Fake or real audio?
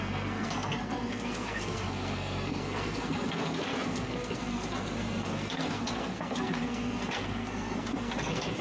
fake